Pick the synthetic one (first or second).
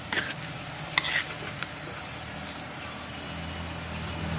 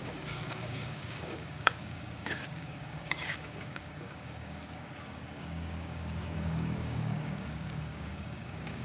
second